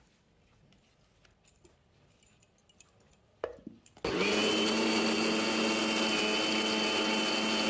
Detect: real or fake real